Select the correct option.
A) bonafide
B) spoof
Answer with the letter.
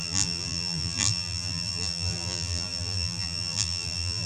B